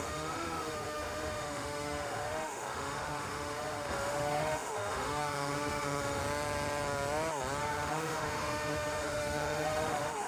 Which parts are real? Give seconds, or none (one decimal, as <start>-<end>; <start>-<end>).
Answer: 6.2-7.6